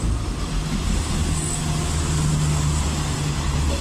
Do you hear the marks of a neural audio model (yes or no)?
no